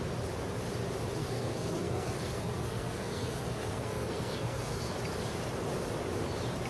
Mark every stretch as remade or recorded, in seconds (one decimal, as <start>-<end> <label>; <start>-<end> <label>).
0.0-1.2 recorded; 1.2-5.0 remade; 5.0-6.7 recorded